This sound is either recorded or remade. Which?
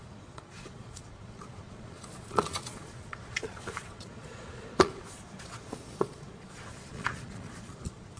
remade